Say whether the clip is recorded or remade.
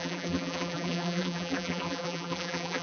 remade